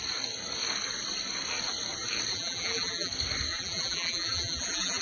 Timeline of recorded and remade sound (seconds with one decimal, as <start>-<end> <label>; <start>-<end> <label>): 0.0-2.3 recorded; 2.3-3.1 remade; 3.1-3.5 recorded; 3.5-5.0 remade

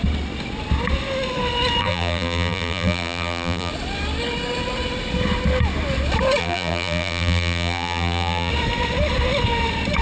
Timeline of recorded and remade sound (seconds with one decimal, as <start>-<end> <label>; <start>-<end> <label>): 0.0-1.8 recorded; 1.8-3.7 remade; 3.7-6.4 recorded; 6.4-8.5 remade; 8.5-10.0 recorded